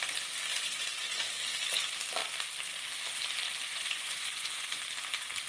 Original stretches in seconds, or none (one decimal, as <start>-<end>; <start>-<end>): 0.0-0.5; 1.2-3.7; 4.8-5.5